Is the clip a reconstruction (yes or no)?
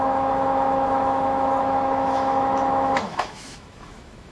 yes